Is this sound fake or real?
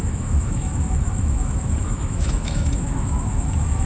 fake